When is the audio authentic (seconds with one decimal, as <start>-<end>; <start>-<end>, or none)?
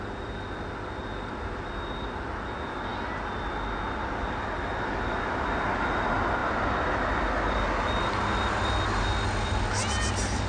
0.0-10.5